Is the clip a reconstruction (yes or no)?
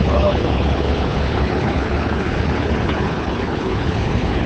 yes